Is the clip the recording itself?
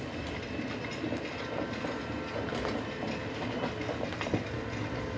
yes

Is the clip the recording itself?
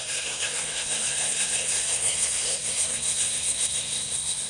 no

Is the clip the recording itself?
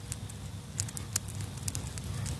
yes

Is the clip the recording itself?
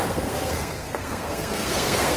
no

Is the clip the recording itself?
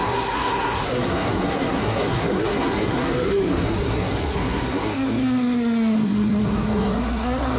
no